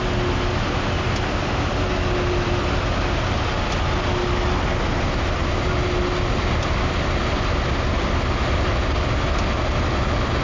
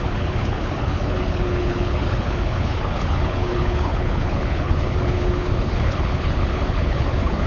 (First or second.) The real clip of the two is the first